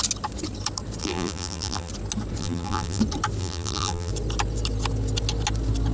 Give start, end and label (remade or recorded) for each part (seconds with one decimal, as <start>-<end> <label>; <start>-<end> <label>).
0.0-1.0 recorded; 1.0-1.9 remade; 1.9-2.4 recorded; 2.4-3.0 remade; 3.0-3.4 recorded; 3.4-4.1 remade; 4.1-5.9 recorded